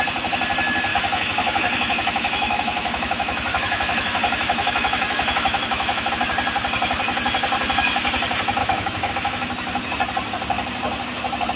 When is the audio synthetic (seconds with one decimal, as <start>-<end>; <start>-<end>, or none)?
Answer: 0.9-6.1; 8.6-9.1